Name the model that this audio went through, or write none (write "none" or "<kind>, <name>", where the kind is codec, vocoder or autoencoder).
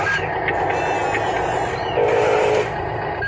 none